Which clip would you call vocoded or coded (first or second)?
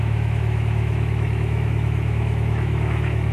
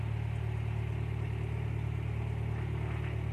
first